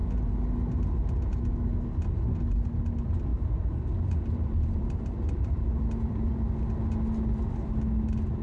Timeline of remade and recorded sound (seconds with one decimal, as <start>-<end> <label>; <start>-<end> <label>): 0.0-3.3 recorded; 3.3-6.3 remade; 6.3-8.4 recorded